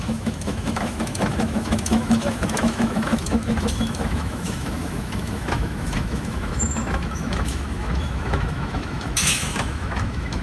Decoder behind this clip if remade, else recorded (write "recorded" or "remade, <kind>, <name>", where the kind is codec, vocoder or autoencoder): remade, autoencoder, DAC-VAE